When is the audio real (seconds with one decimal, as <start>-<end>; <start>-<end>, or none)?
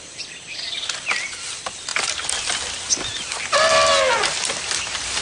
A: 0.0-5.2